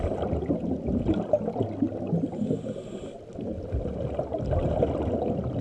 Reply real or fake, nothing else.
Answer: real